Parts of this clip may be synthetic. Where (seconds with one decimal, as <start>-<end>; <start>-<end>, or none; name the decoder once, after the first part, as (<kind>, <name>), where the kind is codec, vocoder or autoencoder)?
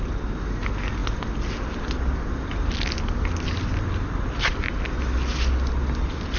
none